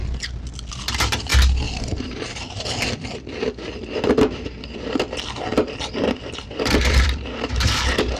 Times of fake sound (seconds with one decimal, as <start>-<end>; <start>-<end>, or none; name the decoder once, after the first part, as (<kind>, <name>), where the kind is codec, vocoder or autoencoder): 0.7-1.3 (vocoder, BigVGAN v2); 1.8-8.2